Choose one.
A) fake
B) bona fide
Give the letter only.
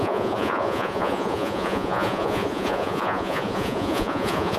A